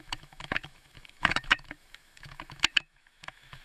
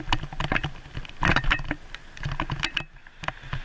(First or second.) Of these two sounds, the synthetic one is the first